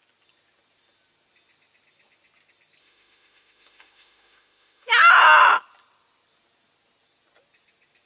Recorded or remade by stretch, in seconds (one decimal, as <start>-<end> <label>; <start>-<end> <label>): 0.0-2.8 recorded; 2.8-5.1 remade; 5.1-8.1 recorded